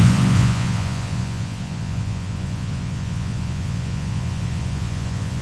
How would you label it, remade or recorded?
remade